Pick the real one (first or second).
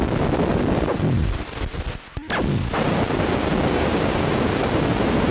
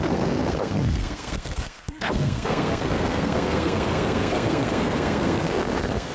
first